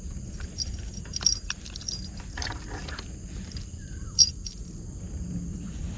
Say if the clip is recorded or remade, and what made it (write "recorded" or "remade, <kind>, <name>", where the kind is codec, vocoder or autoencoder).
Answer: recorded